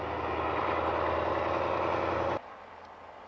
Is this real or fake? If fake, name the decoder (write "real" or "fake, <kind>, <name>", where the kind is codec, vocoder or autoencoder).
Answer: real